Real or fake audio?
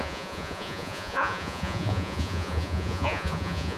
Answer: fake